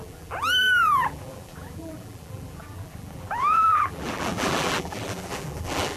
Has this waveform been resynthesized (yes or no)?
yes